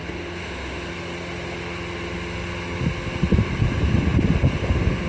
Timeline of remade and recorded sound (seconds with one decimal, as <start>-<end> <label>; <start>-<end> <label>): 0.0-0.9 remade; 0.9-5.1 recorded